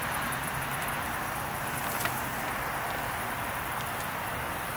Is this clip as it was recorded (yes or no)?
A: yes